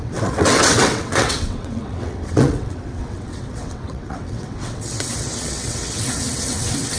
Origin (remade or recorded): remade